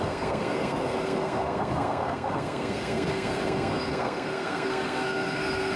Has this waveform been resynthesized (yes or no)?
yes